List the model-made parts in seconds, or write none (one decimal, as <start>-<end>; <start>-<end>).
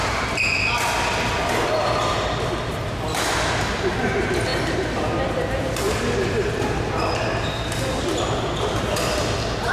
none